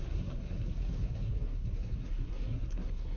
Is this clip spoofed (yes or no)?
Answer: yes